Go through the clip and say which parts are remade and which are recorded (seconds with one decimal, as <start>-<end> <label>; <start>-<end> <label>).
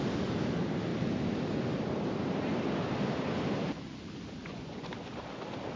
0.0-4.4 recorded; 4.4-4.9 remade; 4.9-5.8 recorded